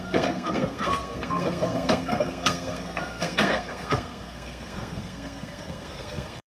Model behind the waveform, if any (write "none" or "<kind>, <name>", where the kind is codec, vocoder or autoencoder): codec, SNAC